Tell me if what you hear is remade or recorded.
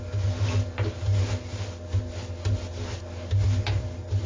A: recorded